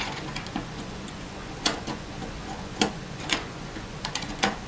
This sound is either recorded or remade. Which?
remade